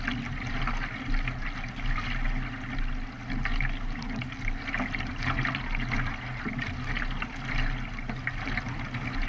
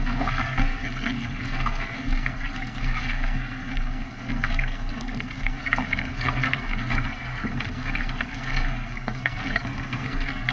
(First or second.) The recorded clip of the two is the first